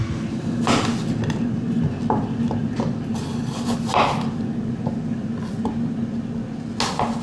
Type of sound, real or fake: real